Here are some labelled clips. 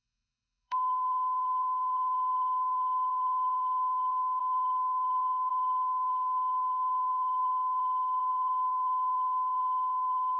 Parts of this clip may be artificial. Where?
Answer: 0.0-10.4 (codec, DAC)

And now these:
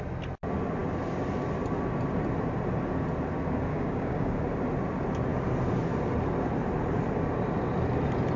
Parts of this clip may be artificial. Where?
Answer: 3.7-4.4 (codec, DAC)

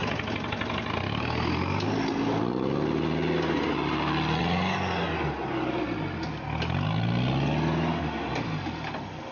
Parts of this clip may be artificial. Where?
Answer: none

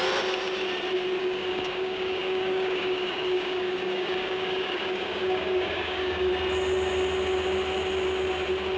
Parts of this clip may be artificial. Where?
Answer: 1.2-6.3 (codec, DAC)

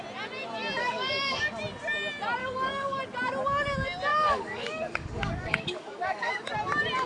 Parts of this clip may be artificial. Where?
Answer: 0.8-1.4 (codec, DAC); 2.4-3.0; 4.1-6.5

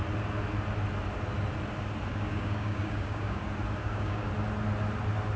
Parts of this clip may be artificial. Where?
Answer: 2.1-3.4 (codec, DAC); 3.8-4.3

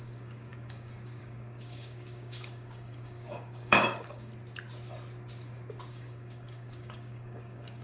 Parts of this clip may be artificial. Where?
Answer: 0.0-4.3 (codec, DAC); 5.9-7.8